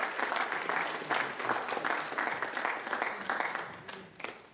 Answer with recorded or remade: recorded